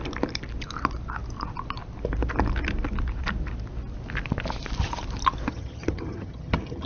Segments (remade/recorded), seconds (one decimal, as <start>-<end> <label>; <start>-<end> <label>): 0.0-5.5 recorded; 5.5-6.9 remade